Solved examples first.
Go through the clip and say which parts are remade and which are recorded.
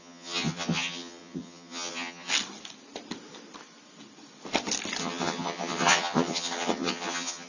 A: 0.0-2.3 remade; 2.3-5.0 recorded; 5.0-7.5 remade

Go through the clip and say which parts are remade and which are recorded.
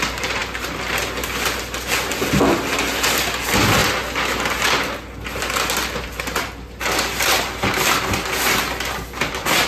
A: 0.0-9.7 recorded